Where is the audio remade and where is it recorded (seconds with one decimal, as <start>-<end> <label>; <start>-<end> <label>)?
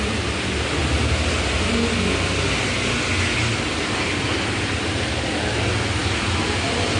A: 0.0-7.0 recorded